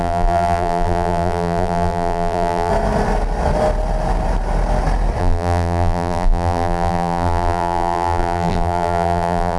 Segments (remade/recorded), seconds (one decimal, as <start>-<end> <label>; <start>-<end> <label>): 0.0-2.7 remade; 2.7-5.2 recorded; 5.2-9.6 remade